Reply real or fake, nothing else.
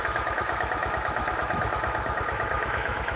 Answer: fake